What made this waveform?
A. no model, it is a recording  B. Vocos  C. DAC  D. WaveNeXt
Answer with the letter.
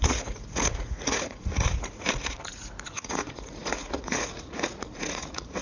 B